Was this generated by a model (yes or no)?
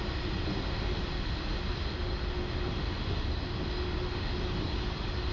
no